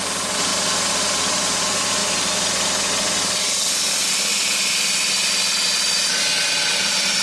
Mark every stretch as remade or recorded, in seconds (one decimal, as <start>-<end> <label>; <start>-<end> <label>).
0.0-7.2 recorded